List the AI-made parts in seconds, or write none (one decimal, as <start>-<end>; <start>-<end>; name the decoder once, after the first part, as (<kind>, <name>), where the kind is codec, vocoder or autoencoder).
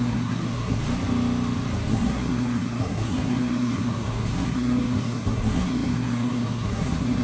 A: 0.0-0.8 (codec, SNAC); 1.9-7.2